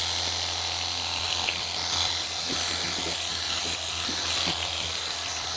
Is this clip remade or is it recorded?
recorded